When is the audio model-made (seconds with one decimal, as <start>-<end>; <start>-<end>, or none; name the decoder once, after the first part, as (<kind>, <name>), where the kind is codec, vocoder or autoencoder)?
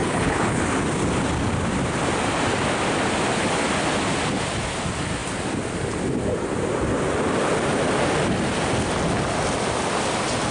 0.0-0.6 (codec, HILCodec)